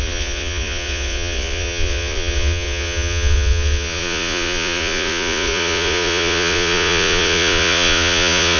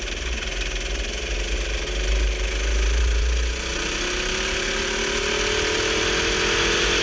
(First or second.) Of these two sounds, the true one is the second